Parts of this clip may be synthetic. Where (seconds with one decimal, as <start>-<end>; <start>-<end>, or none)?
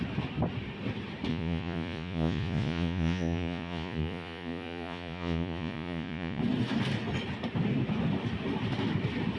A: 1.3-6.4